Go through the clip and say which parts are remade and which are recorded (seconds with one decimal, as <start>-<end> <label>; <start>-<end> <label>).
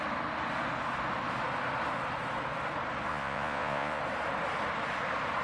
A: 0.0-3.1 recorded; 3.1-4.0 remade; 4.0-5.4 recorded